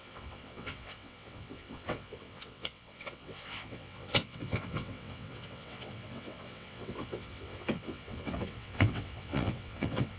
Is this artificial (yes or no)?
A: yes